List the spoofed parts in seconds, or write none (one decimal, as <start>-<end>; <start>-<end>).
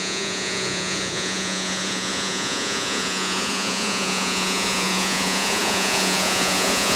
0.0-7.0